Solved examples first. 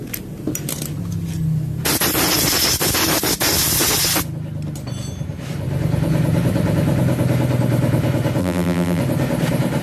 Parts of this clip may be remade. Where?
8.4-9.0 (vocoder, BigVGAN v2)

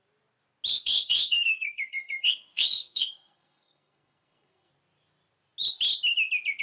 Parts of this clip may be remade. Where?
0.7-4.7 (codec, SNAC)

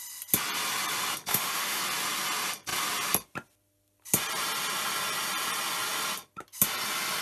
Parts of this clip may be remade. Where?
1.3-1.8 (autoencoder, DAC-VAE)

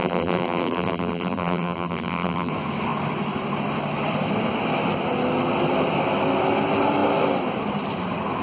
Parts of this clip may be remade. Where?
0.0-2.5 (vocoder, BigVGAN v2)